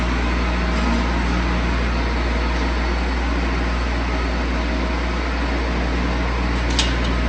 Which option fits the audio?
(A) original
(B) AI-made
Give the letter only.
A